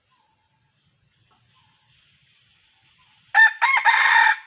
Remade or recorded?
recorded